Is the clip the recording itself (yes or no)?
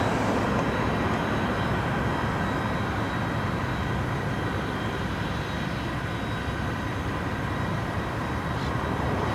yes